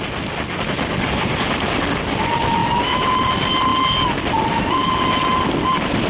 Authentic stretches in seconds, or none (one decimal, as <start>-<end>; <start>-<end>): 0.0-2.6; 3.3-6.1